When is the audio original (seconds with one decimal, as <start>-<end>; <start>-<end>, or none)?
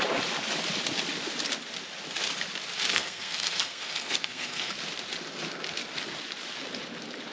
0.0-2.9; 4.7-7.3